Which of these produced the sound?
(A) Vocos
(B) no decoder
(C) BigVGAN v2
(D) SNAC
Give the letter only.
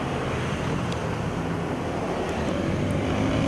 B